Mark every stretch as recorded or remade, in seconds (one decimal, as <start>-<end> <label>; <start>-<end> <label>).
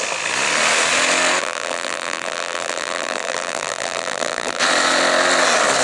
0.0-1.4 recorded; 1.4-4.6 remade; 4.6-5.8 recorded